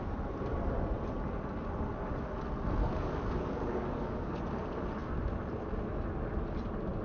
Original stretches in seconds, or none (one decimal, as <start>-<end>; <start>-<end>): 0.0-2.8; 4.4-7.0